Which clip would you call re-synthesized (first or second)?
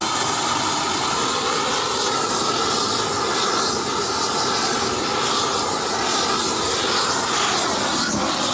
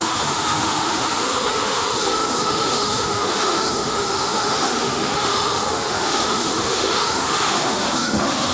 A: second